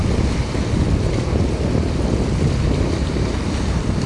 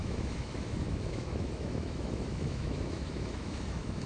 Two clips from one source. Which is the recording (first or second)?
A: first